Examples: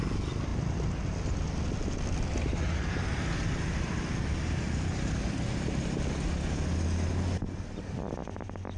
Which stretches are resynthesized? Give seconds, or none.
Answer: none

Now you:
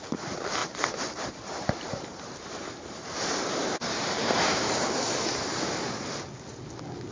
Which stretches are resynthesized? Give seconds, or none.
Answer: 0.6-4.9 (vocoder, BigVGAN v2)

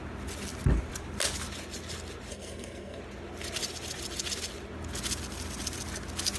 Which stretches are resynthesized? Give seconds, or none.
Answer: 2.3-3.0 (codec, SNAC)

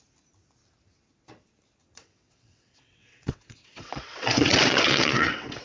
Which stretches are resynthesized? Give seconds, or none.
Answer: 1.8-5.6 (vocoder, WaveNeXt)

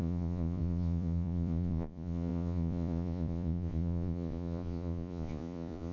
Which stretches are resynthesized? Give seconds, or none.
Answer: 0.0-5.9 (vocoder, Vocos)